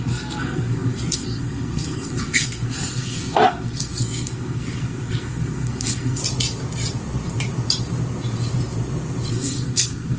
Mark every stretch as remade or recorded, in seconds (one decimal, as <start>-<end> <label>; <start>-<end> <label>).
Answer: 0.0-6.2 remade; 6.2-9.3 recorded; 9.3-10.2 remade